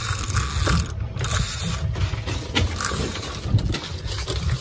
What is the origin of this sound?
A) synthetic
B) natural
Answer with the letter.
B